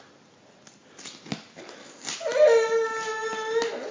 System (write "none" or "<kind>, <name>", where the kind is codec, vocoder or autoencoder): none